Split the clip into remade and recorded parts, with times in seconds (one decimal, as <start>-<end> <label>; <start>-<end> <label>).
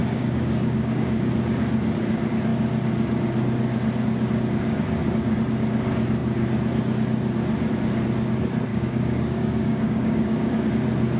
0.0-1.3 remade; 1.3-8.7 recorded; 8.7-10.7 remade; 10.7-11.2 recorded